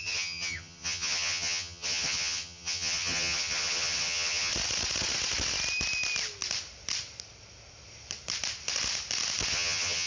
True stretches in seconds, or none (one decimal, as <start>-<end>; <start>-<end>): 4.5-9.5